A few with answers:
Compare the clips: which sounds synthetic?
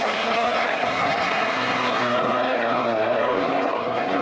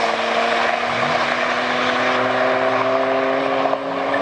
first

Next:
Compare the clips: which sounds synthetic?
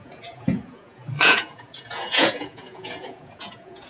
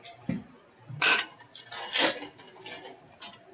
first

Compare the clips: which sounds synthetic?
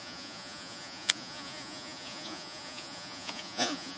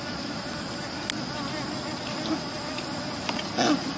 first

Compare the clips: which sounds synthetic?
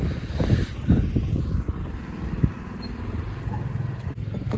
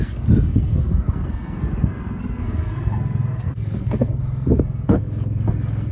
second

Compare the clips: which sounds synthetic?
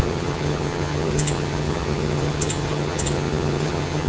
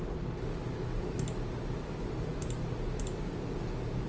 first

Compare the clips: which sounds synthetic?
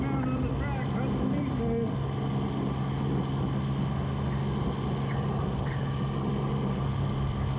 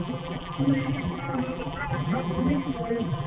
second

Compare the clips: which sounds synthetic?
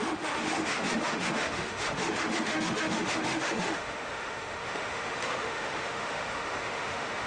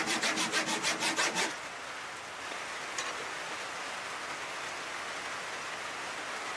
first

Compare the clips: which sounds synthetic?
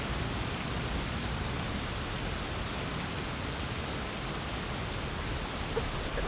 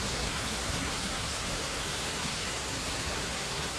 second